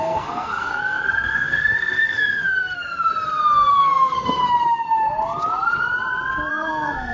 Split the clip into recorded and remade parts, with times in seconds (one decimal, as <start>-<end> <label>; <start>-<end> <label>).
0.0-3.1 remade; 3.1-3.7 recorded; 3.7-4.4 remade; 4.4-6.5 recorded; 6.5-7.1 remade